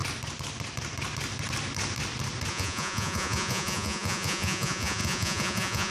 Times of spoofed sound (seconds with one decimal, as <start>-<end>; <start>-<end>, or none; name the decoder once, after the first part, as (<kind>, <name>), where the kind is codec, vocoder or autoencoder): 2.5-5.9 (vocoder, Vocos)